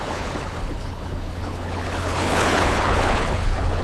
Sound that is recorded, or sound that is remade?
remade